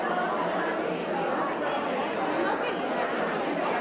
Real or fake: real